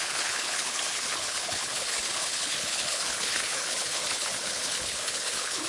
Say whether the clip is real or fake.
fake